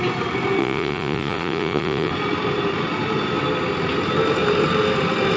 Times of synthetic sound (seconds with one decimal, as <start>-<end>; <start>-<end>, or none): 0.6-2.1